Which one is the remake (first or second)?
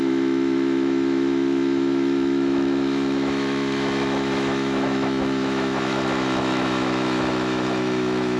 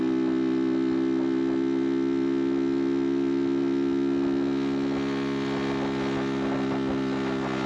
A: first